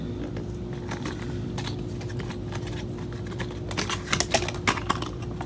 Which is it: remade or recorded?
recorded